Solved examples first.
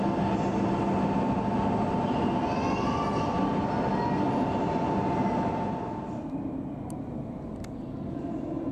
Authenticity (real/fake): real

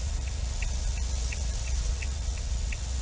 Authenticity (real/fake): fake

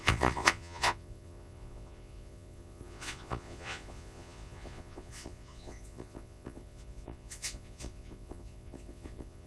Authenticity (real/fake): fake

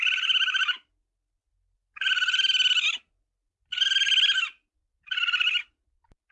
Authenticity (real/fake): real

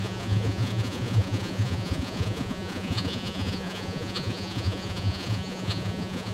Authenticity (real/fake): fake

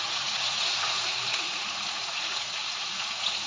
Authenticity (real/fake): fake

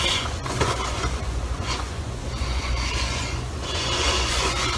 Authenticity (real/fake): fake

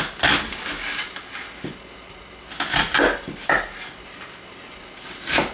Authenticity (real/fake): real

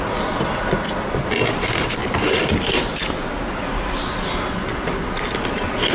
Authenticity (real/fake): real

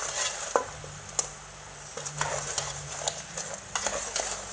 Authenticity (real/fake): real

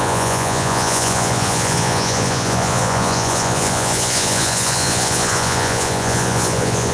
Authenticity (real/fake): fake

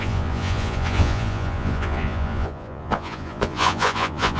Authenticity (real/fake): fake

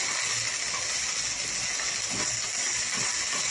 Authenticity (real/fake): real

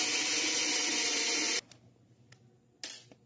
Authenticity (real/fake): real